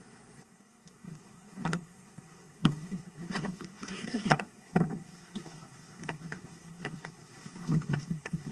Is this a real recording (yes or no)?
no